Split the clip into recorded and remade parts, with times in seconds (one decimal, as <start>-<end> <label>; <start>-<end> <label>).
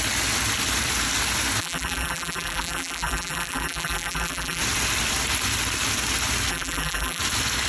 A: 0.0-1.6 recorded; 1.6-4.6 remade; 4.6-6.5 recorded; 6.5-7.2 remade; 7.2-7.7 recorded